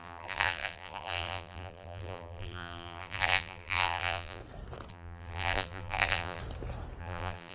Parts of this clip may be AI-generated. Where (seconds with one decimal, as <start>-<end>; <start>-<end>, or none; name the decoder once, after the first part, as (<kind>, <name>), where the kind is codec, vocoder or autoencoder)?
0.0-4.4 (vocoder, BigVGAN v2); 4.9-6.4; 7.0-7.5